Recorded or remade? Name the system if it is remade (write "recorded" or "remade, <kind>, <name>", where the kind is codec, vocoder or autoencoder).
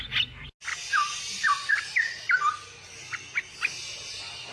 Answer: recorded